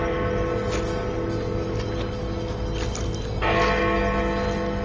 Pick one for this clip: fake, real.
real